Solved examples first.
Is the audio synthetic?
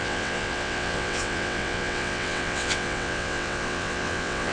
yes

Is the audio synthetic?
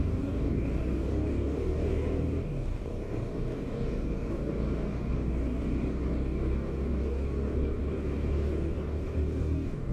yes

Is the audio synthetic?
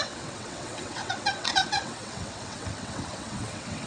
yes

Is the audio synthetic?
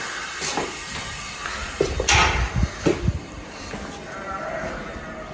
no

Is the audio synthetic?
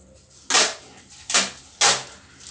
no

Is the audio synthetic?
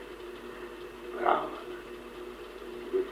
yes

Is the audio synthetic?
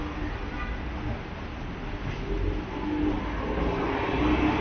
no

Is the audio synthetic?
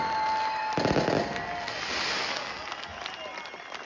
no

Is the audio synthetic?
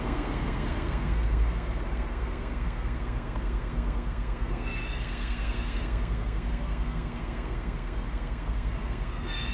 yes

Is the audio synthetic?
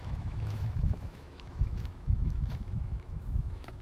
yes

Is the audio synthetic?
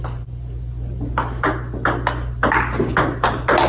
no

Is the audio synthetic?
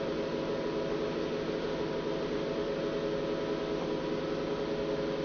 no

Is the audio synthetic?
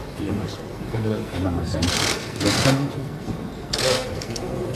yes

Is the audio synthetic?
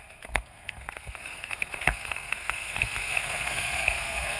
yes